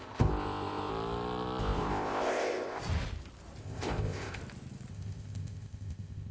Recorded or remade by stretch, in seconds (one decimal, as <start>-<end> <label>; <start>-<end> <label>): 0.0-0.9 remade; 0.9-1.6 recorded; 1.6-2.8 remade; 2.8-3.6 recorded; 3.6-4.4 remade; 4.4-4.9 recorded; 4.9-6.3 remade